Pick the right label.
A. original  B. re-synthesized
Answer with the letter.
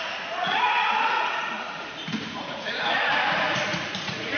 B